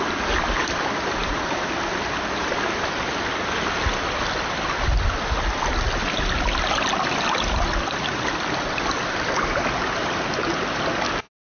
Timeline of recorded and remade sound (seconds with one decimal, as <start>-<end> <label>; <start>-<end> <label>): 0.0-11.5 recorded